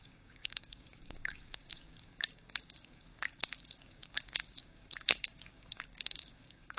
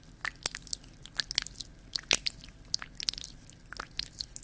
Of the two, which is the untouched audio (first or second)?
second